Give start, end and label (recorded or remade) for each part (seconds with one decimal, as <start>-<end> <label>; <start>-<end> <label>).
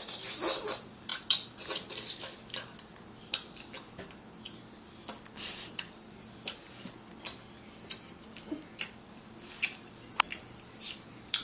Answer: 0.0-11.4 remade